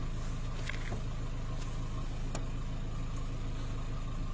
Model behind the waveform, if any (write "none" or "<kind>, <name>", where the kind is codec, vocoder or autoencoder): none